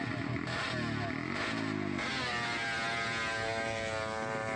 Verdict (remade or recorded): recorded